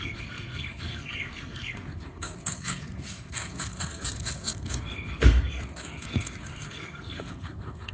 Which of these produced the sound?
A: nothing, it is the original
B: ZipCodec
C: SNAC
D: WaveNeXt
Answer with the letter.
C